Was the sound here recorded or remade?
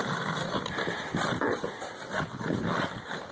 remade